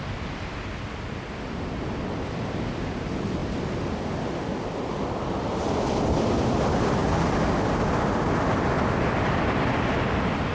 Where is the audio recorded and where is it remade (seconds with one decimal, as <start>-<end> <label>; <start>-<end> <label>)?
0.0-3.4 recorded; 3.4-4.2 remade; 4.2-10.5 recorded